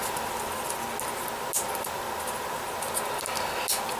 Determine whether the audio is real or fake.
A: real